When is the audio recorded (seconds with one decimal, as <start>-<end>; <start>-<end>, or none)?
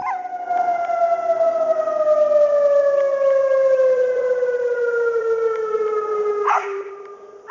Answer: 0.0-3.4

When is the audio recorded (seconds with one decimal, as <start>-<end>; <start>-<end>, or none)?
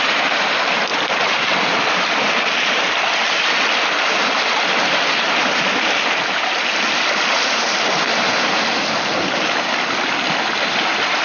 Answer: 0.0-11.2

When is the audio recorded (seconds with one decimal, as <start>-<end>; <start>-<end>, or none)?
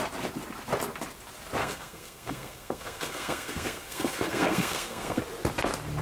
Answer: 0.0-1.6; 5.2-6.0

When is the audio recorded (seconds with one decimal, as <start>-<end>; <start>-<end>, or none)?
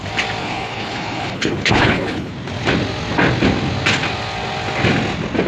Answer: 0.0-0.4; 2.3-5.5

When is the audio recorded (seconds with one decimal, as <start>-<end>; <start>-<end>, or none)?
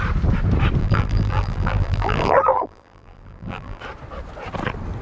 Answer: 0.0-0.8; 3.8-5.0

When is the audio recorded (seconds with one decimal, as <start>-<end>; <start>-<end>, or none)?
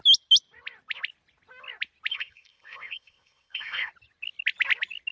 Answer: 0.0-2.1; 3.9-5.1